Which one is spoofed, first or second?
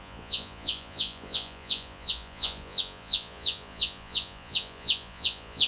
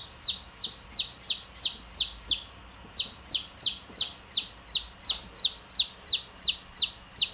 first